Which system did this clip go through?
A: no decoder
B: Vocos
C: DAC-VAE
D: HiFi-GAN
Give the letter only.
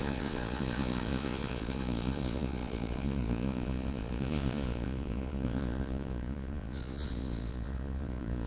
B